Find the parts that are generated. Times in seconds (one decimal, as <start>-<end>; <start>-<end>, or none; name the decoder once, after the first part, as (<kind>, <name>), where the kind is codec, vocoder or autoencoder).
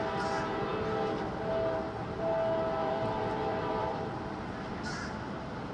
2.8-4.4 (vocoder, BigVGAN v2)